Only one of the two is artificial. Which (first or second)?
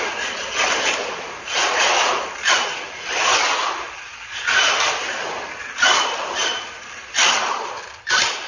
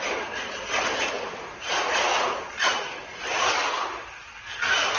first